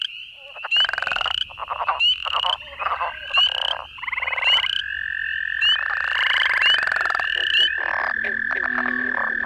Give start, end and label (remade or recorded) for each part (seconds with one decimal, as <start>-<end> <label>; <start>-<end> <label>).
0.0-9.5 recorded